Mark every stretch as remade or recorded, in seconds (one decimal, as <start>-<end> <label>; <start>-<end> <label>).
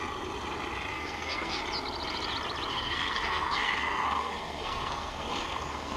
0.0-0.9 recorded; 0.9-1.6 remade; 1.6-2.7 recorded; 2.7-6.0 remade